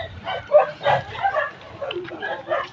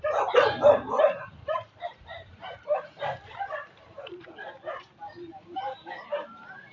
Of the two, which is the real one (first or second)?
first